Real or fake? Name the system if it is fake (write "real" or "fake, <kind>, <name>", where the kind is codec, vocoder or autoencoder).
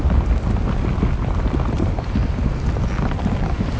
fake, vocoder, BigVGAN v2